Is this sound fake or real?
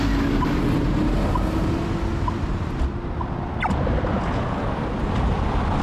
real